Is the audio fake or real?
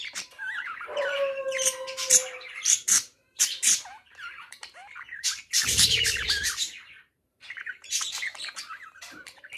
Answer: fake